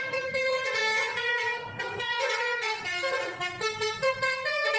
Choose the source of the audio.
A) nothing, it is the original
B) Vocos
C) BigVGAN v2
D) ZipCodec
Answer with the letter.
B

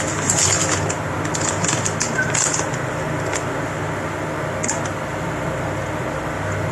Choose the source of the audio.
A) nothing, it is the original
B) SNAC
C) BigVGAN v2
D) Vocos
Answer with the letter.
A